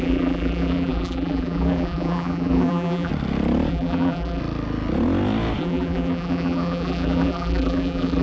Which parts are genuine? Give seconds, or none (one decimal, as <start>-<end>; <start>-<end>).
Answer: 3.1-3.7; 4.4-5.6